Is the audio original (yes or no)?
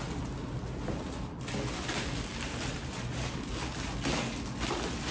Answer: yes